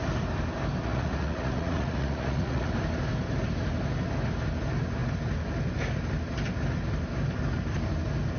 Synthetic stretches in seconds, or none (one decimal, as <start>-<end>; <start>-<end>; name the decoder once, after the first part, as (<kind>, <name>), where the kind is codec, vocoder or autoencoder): 0.8-2.7 (vocoder, Vocos)